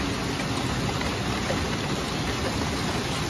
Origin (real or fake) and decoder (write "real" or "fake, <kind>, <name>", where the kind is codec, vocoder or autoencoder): real